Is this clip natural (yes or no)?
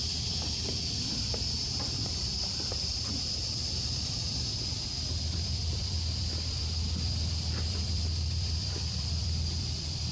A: no